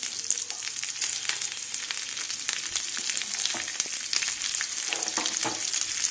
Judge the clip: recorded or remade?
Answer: recorded